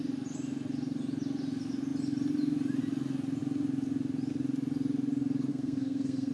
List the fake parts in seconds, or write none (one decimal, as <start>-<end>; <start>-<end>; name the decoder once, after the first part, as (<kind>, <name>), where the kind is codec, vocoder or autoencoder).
5.5-6.3 (codec, SNAC)